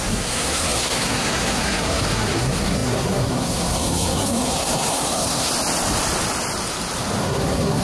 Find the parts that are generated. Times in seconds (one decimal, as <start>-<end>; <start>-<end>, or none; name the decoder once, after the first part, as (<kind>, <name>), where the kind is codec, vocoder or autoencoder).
0.0-5.5 (codec, SNAC); 7.2-7.8